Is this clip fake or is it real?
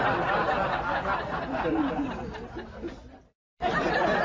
real